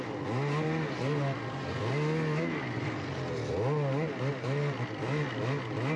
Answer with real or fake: real